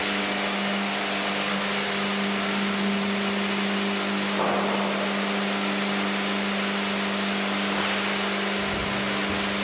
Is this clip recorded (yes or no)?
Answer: yes